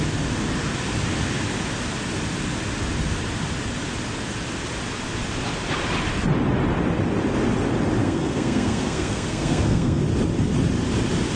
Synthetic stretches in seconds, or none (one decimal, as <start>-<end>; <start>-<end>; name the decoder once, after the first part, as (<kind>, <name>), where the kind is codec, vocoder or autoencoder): 8.0-10.0 (codec, SNAC)